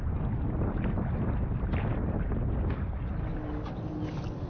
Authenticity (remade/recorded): recorded